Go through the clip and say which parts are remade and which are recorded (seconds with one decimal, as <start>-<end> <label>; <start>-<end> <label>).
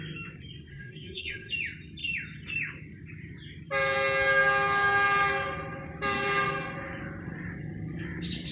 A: 0.0-0.7 recorded; 0.7-1.5 remade; 1.5-8.5 recorded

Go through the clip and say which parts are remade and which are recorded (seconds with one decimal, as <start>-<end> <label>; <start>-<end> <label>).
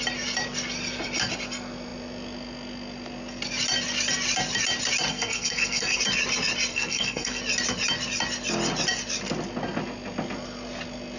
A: 0.0-5.1 recorded; 5.1-6.0 remade; 6.0-6.7 recorded; 6.7-7.4 remade; 7.4-11.2 recorded